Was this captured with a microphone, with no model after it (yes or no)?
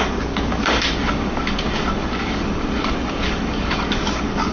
no